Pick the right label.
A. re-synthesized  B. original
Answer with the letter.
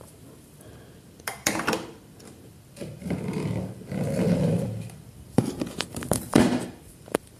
A